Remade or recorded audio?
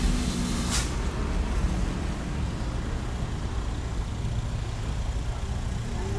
recorded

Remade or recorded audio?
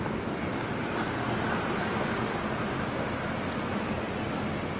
recorded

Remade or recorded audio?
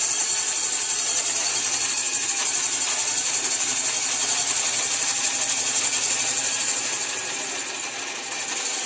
recorded